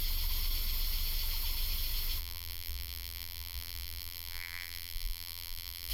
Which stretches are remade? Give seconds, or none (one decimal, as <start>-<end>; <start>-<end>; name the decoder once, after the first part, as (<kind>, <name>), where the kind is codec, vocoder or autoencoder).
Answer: 2.2-5.9 (vocoder, BigVGAN v2)